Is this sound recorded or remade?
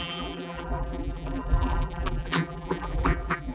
remade